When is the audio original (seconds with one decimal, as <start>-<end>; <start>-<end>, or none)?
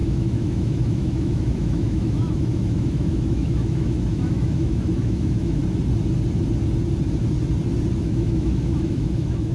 5.6-8.0